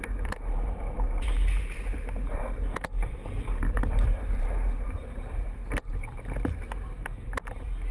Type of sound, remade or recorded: remade